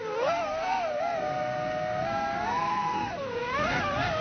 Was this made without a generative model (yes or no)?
no